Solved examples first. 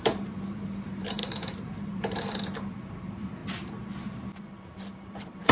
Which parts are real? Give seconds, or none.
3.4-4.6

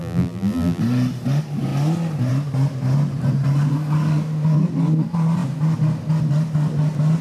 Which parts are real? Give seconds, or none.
0.8-7.2

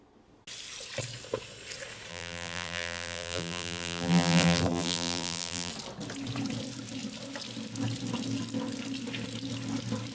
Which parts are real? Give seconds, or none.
0.0-2.1; 5.7-10.1

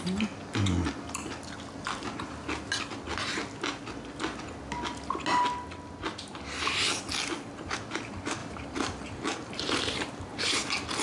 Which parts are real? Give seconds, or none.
0.0-8.4; 10.4-11.0

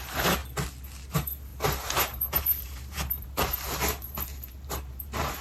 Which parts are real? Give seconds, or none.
0.4-1.1

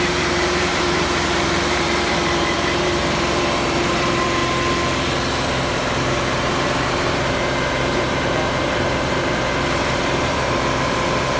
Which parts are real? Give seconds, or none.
4.4-5.7

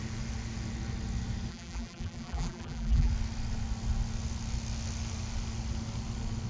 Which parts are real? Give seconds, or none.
0.0-1.5; 3.1-6.5

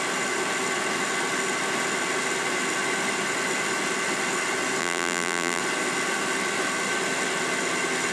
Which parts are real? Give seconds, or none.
0.0-4.8; 5.6-8.1